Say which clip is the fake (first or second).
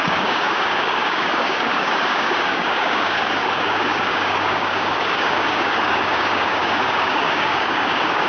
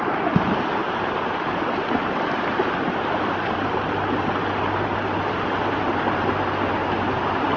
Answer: first